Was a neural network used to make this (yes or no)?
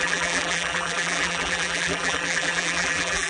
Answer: yes